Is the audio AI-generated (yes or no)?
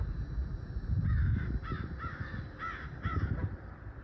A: yes